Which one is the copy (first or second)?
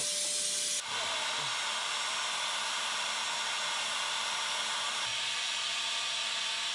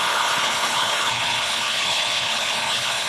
second